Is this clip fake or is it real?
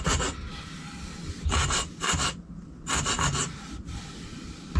real